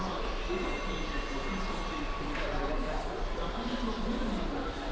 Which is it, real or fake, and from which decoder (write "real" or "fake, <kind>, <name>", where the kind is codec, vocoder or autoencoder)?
real